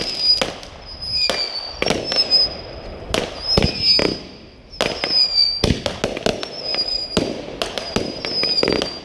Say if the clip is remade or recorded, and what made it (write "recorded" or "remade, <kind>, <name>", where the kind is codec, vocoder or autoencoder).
recorded